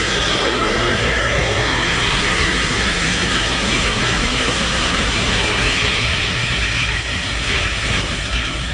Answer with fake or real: fake